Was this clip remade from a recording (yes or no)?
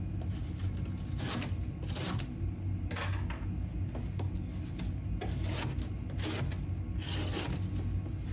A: no